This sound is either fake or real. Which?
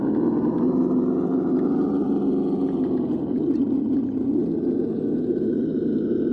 real